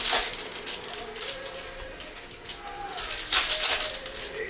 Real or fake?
real